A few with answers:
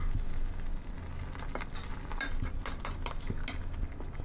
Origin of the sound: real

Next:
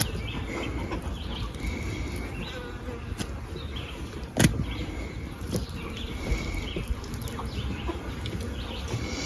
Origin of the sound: real